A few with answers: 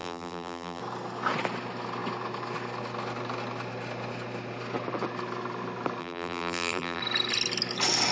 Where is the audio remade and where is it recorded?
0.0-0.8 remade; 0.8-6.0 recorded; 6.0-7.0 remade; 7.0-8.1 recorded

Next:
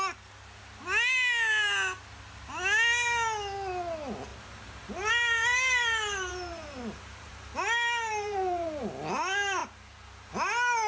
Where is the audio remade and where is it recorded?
0.0-4.3 recorded; 4.3-7.4 remade; 7.4-8.1 recorded; 8.1-8.9 remade; 8.9-9.6 recorded; 9.6-10.3 remade; 10.3-10.9 recorded

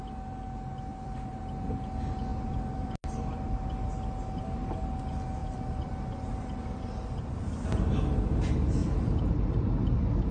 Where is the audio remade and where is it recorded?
0.0-0.9 recorded; 0.9-1.4 remade; 1.4-2.3 recorded; 2.3-3.0 remade; 3.0-5.4 recorded; 5.4-5.9 remade; 5.9-8.8 recorded; 8.8-9.7 remade; 9.7-10.3 recorded

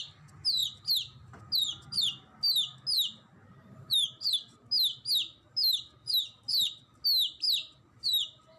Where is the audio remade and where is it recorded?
0.0-0.6 recorded; 0.6-1.4 remade; 1.4-3.6 recorded; 3.6-4.2 remade; 4.2-8.6 recorded

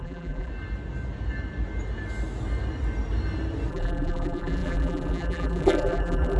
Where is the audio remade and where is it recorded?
0.0-0.5 remade; 0.5-3.7 recorded; 3.7-6.4 remade

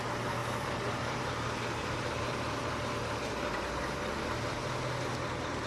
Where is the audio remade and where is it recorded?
0.0-0.4 recorded; 0.4-1.3 remade; 1.3-1.8 recorded; 1.8-2.8 remade; 2.8-5.7 recorded

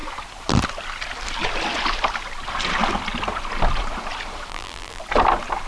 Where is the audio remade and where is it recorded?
0.0-4.5 recorded; 4.5-5.0 remade; 5.0-5.7 recorded

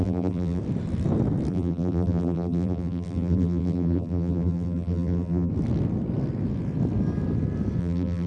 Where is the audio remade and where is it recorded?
0.0-0.6 remade; 0.6-1.5 recorded; 1.5-5.5 remade; 5.5-7.8 recorded; 7.8-8.3 remade